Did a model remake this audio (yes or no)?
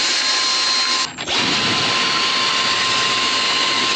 no